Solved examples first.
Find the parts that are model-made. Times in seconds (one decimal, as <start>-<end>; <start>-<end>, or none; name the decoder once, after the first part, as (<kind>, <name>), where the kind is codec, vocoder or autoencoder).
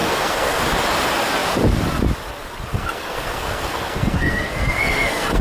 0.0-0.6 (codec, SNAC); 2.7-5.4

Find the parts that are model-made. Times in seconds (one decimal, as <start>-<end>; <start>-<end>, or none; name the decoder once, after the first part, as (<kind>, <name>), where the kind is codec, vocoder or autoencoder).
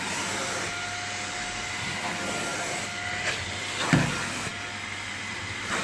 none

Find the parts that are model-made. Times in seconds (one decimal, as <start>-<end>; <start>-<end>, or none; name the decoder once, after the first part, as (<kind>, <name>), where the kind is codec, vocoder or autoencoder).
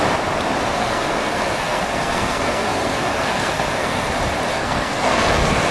0.7-4.1 (codec, SNAC); 4.5-5.7